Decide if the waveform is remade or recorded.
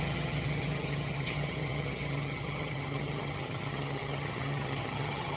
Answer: remade